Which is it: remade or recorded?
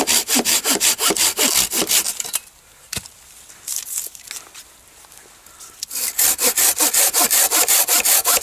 recorded